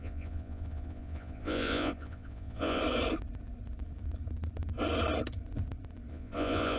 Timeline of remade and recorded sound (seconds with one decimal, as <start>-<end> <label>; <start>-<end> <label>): 0.0-2.8 remade; 2.8-6.1 recorded; 6.1-6.8 remade